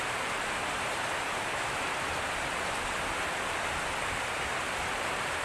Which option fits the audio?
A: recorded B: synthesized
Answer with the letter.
A